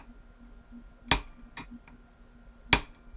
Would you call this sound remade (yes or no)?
no